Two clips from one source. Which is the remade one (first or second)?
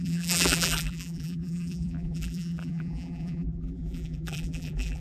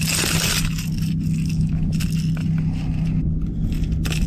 first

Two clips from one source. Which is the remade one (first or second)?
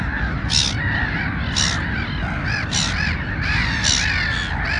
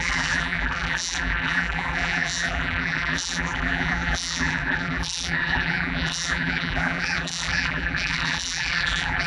second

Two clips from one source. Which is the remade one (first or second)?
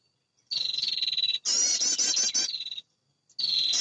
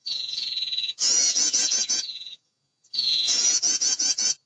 second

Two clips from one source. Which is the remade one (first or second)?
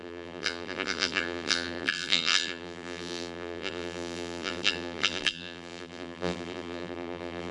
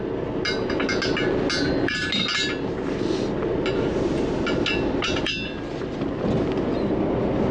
first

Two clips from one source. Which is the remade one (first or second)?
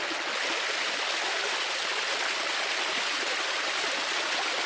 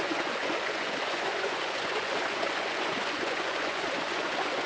second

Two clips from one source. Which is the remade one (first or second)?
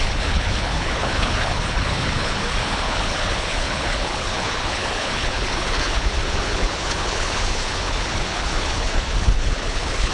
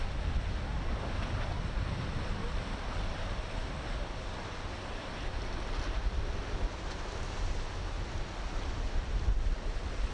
first